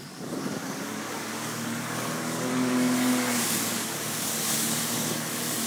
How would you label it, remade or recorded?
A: remade